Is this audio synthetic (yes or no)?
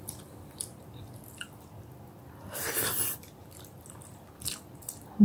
no